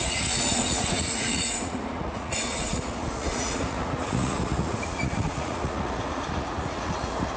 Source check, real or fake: fake